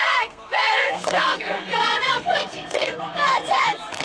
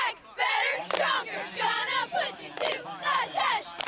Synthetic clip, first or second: first